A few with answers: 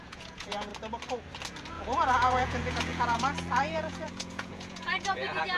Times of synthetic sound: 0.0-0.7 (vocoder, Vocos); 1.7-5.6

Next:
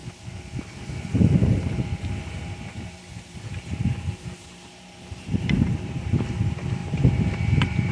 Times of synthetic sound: 2.4-6.1 (vocoder, BigVGAN v2); 6.8-7.9